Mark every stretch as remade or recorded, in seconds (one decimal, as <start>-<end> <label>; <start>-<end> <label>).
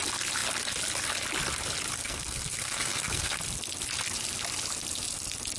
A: 0.0-2.0 recorded; 2.0-3.4 remade; 3.4-5.6 recorded